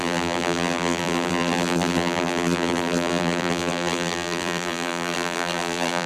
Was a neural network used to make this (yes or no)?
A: yes